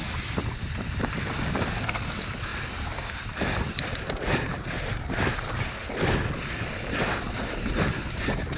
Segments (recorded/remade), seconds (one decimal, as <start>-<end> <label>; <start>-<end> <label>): 0.0-0.4 recorded; 0.4-1.1 remade; 1.1-2.5 recorded; 2.5-7.7 remade; 7.7-8.6 recorded